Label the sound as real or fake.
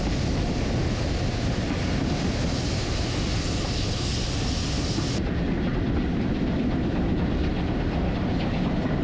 real